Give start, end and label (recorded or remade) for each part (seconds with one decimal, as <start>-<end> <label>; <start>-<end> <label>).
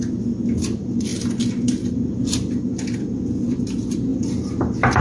0.0-5.0 recorded